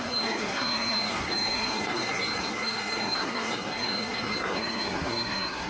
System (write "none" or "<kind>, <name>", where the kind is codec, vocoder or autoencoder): codec, SNAC